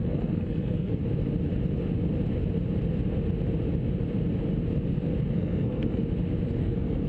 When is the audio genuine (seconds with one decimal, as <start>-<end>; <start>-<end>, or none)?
1.0-5.3; 6.0-6.6